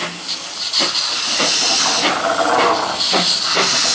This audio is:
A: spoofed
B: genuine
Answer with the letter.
B